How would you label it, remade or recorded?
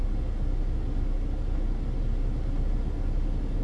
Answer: recorded